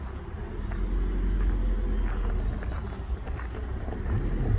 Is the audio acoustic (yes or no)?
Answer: yes